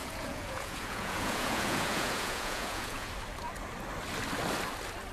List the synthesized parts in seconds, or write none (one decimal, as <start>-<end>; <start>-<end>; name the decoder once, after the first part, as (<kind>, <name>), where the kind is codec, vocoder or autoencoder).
0.0-3.1 (vocoder, Vocos)